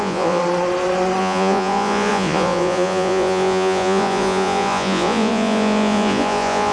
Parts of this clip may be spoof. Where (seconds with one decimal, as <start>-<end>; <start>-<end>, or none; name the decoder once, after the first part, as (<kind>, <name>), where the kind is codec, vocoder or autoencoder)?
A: 0.0-0.4 (vocoder, Vocos); 1.2-6.7